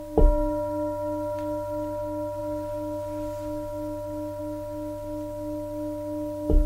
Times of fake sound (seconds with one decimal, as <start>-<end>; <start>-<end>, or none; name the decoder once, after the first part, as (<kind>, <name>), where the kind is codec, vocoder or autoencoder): none